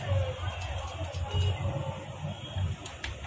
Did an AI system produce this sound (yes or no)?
no